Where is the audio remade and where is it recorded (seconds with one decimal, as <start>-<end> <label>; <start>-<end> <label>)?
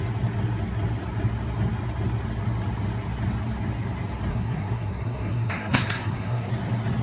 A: 0.0-4.3 recorded; 4.3-6.5 remade; 6.5-7.0 recorded